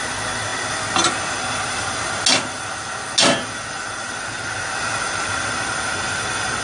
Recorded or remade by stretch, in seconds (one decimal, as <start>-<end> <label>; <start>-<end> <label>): 0.0-6.6 recorded